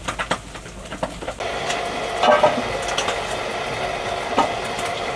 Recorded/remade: recorded